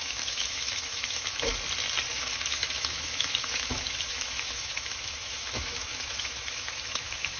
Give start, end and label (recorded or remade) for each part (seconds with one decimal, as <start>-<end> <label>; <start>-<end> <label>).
0.0-1.5 remade; 1.5-2.1 recorded; 2.1-7.4 remade